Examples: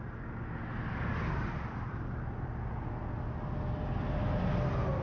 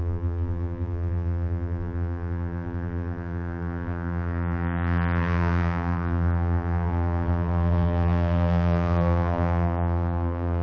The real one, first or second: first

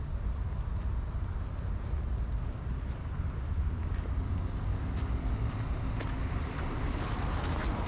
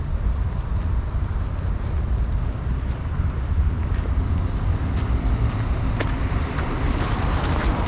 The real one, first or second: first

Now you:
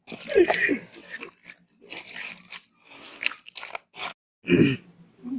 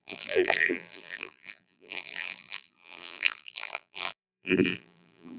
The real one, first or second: first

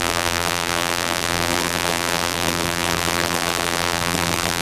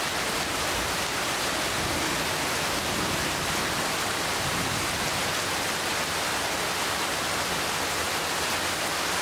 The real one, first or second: second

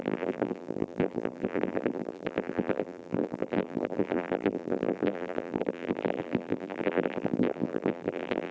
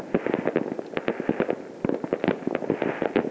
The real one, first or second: second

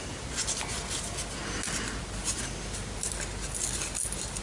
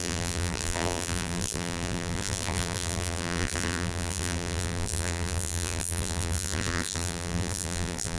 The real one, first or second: first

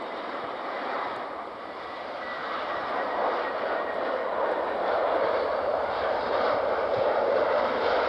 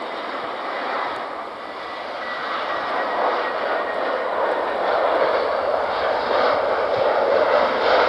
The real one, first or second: second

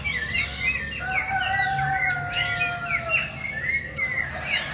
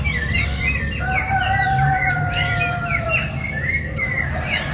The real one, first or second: first